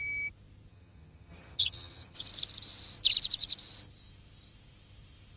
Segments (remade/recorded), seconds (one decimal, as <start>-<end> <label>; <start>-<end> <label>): 0.0-0.7 recorded; 0.7-2.3 remade; 2.3-5.4 recorded